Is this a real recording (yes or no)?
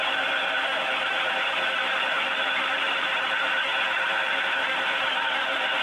no